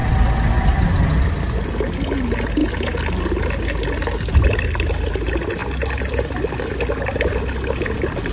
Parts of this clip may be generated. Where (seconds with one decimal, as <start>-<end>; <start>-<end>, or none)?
none